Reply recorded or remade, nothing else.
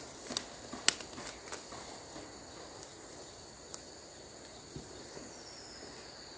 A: recorded